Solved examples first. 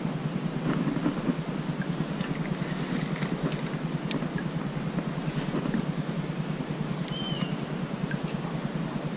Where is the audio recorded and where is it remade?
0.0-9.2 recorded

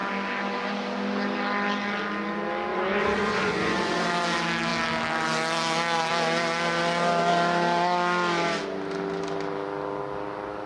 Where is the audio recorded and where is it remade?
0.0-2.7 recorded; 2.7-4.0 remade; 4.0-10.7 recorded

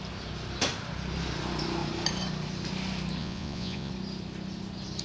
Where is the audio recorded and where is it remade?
0.0-3.2 recorded; 3.2-3.9 remade; 3.9-5.0 recorded

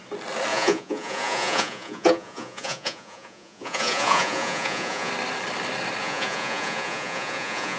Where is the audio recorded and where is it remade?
0.0-0.5 recorded; 0.5-5.1 remade; 5.1-6.0 recorded; 6.0-7.8 remade

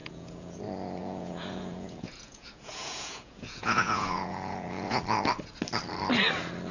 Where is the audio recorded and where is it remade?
0.0-0.6 remade; 0.6-1.0 recorded; 1.0-5.0 remade; 5.0-6.7 recorded

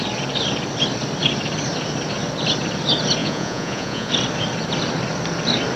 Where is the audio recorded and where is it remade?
0.0-3.2 recorded; 3.2-4.1 remade; 4.1-5.8 recorded

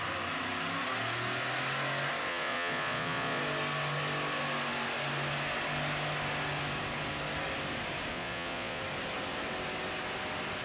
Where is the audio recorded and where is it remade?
0.0-2.3 recorded; 2.3-3.4 remade; 3.4-8.1 recorded; 8.1-8.8 remade; 8.8-10.6 recorded

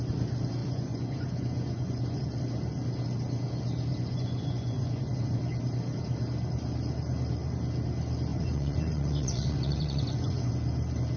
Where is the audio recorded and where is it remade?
0.0-0.6 recorded; 0.6-2.4 remade; 2.4-3.9 recorded; 3.9-5.4 remade; 5.4-8.3 recorded; 8.3-10.5 remade; 10.5-11.2 recorded